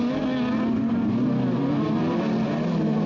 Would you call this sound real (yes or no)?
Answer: yes